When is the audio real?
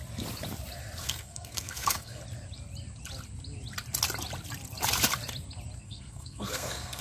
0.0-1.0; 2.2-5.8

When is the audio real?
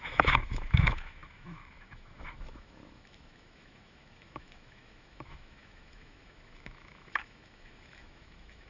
none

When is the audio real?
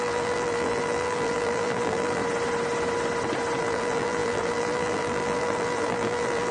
2.2-3.6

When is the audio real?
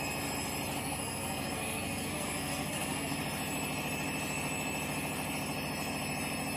0.0-0.8; 3.2-6.6